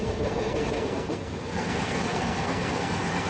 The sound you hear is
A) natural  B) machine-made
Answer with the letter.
B